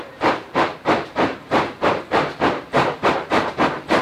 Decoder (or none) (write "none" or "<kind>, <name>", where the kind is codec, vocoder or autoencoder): vocoder, BigVGAN v2